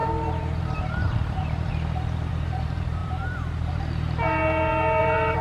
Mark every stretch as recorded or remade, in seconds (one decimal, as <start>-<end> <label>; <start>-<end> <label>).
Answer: 0.0-1.7 remade; 1.7-2.3 recorded; 2.3-4.4 remade; 4.4-5.0 recorded; 5.0-5.4 remade